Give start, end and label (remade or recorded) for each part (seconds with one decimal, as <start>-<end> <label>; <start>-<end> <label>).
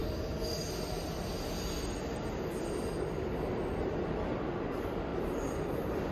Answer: 0.0-5.1 recorded; 5.1-6.1 remade